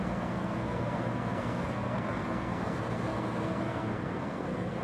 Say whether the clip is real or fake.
fake